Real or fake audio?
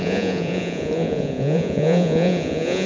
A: fake